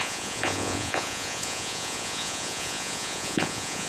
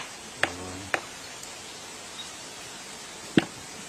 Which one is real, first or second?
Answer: second